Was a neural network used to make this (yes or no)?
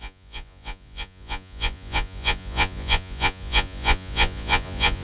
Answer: yes